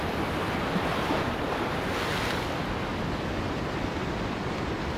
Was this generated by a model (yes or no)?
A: no